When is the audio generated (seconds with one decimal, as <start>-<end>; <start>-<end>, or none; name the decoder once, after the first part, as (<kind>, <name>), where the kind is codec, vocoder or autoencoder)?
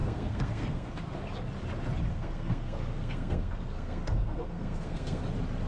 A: 0.0-0.9 (codec, SNAC); 2.1-5.2